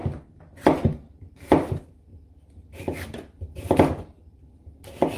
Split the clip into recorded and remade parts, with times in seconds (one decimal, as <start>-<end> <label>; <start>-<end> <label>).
0.0-0.6 recorded; 0.6-2.1 remade; 2.1-4.1 recorded; 4.1-5.2 remade